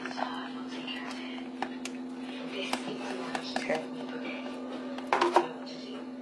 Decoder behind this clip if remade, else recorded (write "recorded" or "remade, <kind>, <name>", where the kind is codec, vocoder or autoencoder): recorded